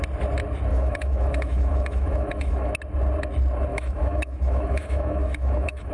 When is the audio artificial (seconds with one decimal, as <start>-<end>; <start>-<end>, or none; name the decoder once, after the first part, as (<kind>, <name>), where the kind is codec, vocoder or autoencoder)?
0.7-2.7 (autoencoder, DAC-VAE); 3.7-5.9